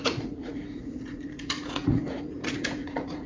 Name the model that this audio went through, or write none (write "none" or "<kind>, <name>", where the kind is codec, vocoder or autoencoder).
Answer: vocoder, Vocos